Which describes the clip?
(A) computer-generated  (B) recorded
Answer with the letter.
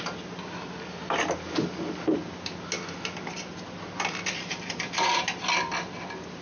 B